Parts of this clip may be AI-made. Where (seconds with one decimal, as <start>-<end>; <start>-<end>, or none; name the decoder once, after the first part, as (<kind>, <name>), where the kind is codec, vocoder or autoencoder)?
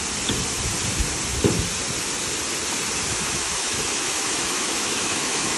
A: 3.1-5.6 (autoencoder, DAC-VAE)